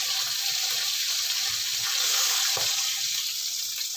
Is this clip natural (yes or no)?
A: yes